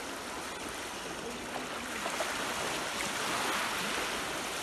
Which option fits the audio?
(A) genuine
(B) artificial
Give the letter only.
A